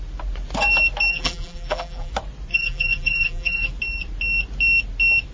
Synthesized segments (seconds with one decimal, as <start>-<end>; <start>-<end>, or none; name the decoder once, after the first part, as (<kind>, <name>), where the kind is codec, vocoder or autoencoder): 1.1-2.1 (vocoder, BigVGAN v2); 2.5-3.7